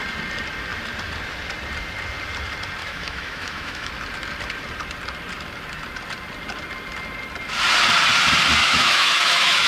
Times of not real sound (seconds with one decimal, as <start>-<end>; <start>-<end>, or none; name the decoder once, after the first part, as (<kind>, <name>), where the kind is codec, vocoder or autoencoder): 2.8-3.9 (autoencoder, DAC-VAE); 8.6-9.7